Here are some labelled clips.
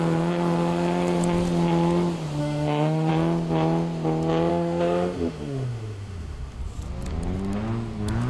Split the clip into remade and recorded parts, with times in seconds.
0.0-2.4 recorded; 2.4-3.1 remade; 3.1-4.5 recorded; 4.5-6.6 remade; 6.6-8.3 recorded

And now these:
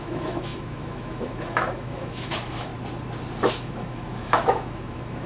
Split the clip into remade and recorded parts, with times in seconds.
0.0-2.7 remade; 2.7-3.5 recorded; 3.5-5.3 remade

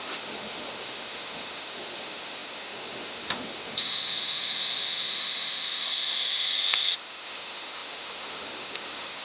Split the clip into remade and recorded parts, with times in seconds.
0.0-9.2 remade

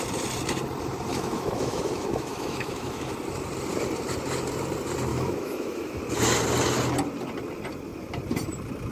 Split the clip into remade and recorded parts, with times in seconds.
0.0-1.1 recorded; 1.1-3.1 remade; 3.1-5.1 recorded; 5.1-6.0 remade; 6.0-8.9 recorded